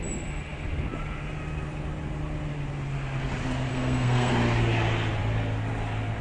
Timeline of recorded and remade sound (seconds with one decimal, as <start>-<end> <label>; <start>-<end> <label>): 0.0-3.7 recorded; 3.7-4.3 remade; 4.3-6.2 recorded